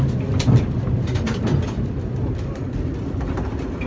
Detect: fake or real real